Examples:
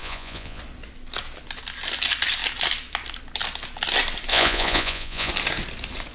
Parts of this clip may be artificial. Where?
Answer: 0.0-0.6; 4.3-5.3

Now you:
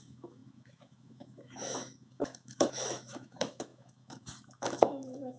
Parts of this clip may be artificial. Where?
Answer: 0.0-5.4

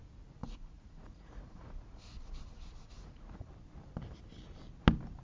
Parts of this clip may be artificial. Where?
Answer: 0.4-3.5